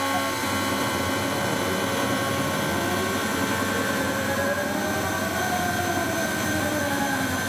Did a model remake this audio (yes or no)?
no